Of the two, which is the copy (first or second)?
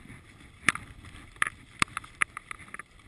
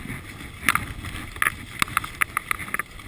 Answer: first